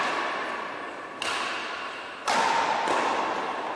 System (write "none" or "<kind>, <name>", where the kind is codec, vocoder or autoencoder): none